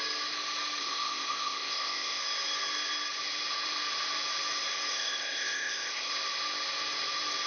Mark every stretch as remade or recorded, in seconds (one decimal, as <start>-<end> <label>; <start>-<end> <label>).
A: 0.0-0.8 recorded; 0.8-2.2 remade; 2.2-4.9 recorded; 4.9-6.1 remade; 6.1-7.5 recorded